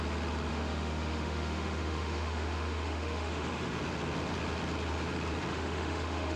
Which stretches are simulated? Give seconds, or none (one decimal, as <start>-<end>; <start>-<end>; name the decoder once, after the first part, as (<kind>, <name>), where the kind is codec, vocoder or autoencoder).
0.5-3.8 (autoencoder, DAC-VAE); 5.5-6.4

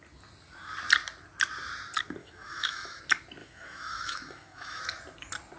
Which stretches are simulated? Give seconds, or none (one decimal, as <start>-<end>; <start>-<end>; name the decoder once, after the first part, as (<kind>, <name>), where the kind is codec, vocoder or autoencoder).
2.2-3.0 (autoencoder, DAC-VAE); 3.4-4.8

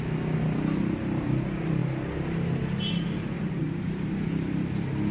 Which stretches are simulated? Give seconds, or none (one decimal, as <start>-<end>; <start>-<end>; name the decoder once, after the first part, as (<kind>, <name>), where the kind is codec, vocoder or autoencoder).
none

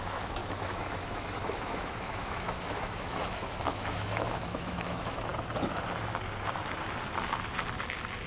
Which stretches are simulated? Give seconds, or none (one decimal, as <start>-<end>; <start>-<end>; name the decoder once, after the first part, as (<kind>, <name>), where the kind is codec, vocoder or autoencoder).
0.0-5.3 (autoencoder, DAC-VAE)

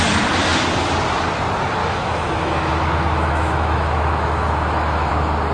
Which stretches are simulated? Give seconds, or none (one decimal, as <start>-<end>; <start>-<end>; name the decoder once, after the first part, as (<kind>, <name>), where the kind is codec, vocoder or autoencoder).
1.8-5.1 (autoencoder, DAC-VAE)

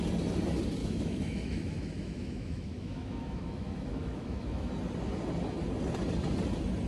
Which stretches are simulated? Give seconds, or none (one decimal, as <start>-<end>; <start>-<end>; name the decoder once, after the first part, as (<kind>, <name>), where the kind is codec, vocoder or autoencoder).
0.8-4.7 (autoencoder, DAC-VAE)

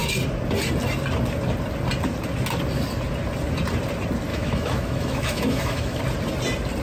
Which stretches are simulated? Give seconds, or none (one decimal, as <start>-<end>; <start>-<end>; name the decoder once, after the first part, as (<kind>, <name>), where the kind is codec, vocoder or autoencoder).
4.3-6.0 (autoencoder, DAC-VAE)